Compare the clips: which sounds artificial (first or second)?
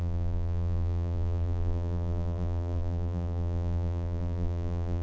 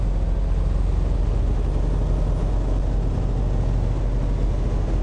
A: first